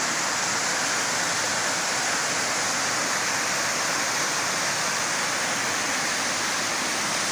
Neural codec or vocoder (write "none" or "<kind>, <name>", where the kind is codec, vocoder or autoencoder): none